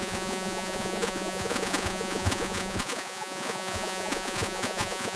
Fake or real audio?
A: fake